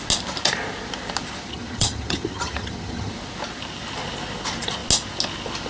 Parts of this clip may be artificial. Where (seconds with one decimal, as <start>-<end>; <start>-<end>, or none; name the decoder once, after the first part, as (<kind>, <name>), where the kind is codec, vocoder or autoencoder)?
1.5-3.1 (vocoder, HiFi-GAN)